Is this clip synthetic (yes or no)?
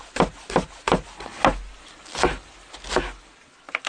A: no